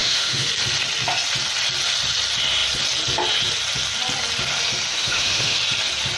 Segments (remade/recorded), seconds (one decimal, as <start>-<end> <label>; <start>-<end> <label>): 0.0-0.5 remade; 0.5-4.9 recorded; 4.9-5.6 remade; 5.6-6.2 recorded